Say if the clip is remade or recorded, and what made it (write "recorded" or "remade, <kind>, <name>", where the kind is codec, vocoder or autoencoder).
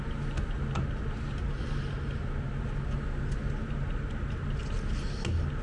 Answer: recorded